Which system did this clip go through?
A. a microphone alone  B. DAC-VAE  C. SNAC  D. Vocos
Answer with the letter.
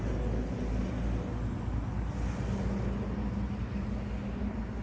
A